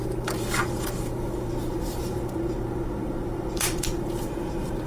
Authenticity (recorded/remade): remade